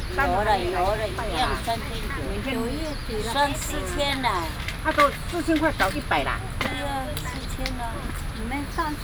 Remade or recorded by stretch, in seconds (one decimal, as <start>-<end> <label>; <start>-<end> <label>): 0.0-0.6 recorded; 0.6-2.5 remade; 2.5-9.0 recorded